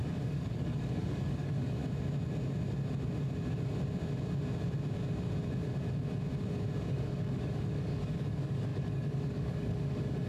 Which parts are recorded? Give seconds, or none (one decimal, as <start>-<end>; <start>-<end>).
1.8-6.9